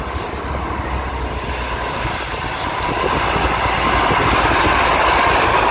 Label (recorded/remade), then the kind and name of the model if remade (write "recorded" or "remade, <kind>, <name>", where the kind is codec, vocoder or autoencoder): recorded